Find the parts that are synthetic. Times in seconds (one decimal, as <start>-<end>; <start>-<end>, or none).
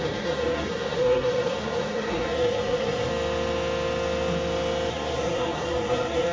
0.0-3.1; 4.9-6.3